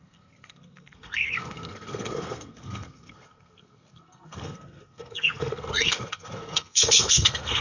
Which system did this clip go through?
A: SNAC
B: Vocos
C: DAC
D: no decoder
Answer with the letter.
A